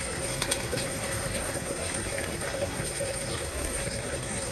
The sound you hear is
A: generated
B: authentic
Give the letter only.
A